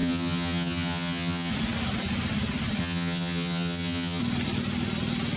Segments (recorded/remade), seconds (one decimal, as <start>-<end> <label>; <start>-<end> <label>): 0.0-1.5 remade; 1.5-2.8 recorded; 2.8-4.2 remade; 4.2-5.4 recorded